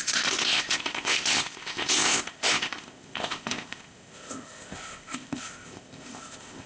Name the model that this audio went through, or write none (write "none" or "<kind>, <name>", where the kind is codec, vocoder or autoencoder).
codec, ZipCodec